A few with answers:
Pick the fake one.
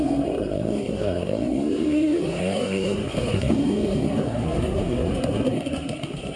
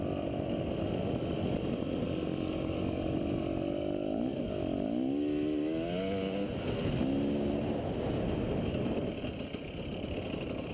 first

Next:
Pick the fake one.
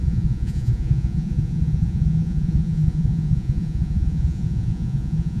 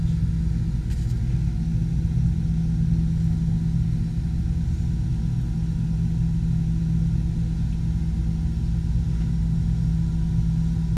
first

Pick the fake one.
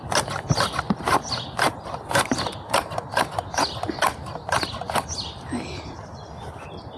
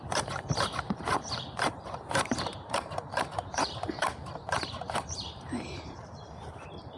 second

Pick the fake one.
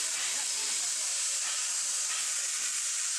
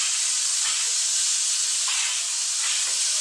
first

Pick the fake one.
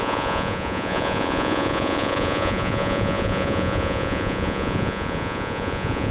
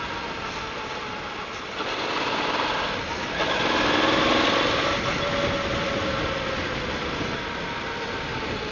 first